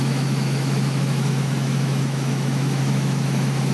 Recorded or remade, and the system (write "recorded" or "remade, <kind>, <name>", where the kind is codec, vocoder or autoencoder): remade, autoencoder, DAC-VAE